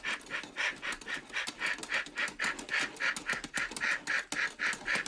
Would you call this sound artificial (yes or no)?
no